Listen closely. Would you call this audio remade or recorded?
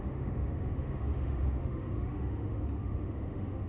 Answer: remade